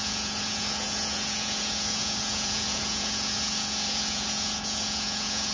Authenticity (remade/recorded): remade